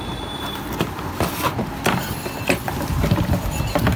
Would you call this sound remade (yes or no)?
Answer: no